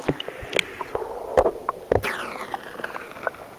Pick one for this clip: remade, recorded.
recorded